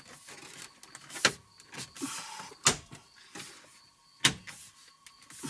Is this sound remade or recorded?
recorded